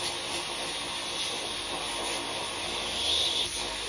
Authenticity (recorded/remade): recorded